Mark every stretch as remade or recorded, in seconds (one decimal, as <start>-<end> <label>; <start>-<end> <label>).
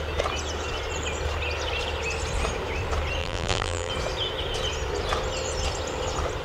0.0-3.2 recorded; 3.2-3.9 remade; 3.9-6.4 recorded